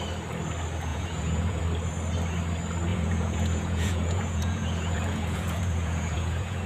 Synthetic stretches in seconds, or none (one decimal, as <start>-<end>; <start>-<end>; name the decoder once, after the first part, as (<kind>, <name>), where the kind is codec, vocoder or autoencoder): 0.9-1.6 (vocoder, Vocos); 2.9-6.7